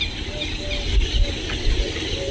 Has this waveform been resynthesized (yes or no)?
no